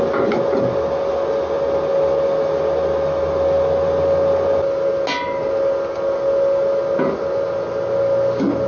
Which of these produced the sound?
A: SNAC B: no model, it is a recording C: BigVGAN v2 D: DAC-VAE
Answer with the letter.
B